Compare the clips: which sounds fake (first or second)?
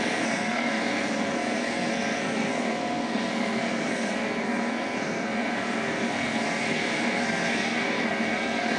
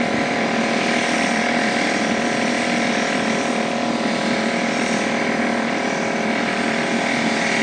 first